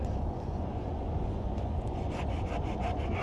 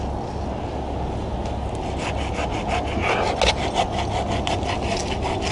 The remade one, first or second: first